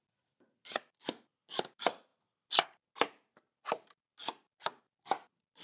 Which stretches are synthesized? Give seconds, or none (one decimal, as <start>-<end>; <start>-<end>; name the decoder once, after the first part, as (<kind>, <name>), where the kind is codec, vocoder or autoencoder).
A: none